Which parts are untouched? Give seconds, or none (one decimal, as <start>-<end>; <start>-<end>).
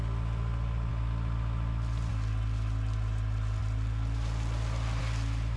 0.0-3.6; 5.0-5.6